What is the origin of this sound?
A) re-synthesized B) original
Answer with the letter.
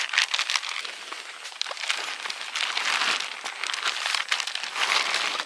B